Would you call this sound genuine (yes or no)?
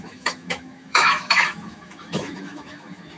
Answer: no